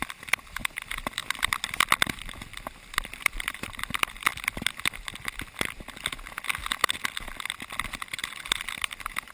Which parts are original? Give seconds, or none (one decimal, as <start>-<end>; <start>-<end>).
1.2-2.0; 4.3-8.2